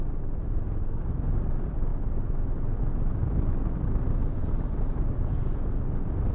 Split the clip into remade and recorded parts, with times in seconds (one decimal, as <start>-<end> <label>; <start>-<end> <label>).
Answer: 0.0-6.3 recorded